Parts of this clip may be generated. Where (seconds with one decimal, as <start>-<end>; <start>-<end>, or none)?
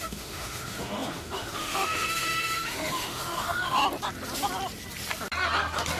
0.0-3.8